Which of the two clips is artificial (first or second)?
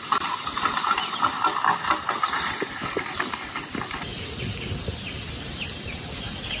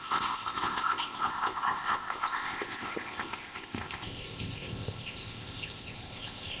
second